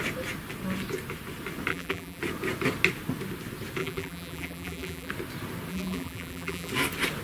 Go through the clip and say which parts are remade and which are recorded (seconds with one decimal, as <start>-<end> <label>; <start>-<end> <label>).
0.0-1.7 recorded; 1.7-2.2 remade; 2.2-3.8 recorded; 3.8-5.1 remade; 5.1-5.7 recorded; 5.7-6.7 remade; 6.7-7.2 recorded